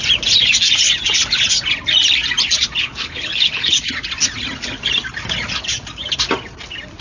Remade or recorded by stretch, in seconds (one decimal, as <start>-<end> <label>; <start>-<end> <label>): 0.0-2.8 recorded; 2.8-3.9 remade; 3.9-7.0 recorded